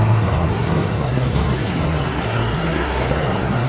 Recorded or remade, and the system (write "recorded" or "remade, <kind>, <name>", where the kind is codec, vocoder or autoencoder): remade, codec, SNAC